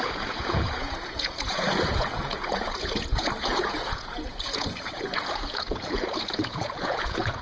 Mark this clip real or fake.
fake